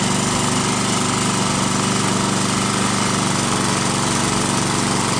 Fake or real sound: real